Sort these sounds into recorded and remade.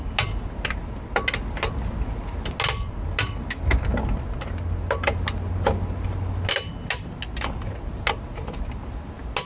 recorded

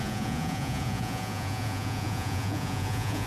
remade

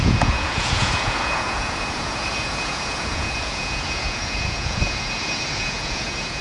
remade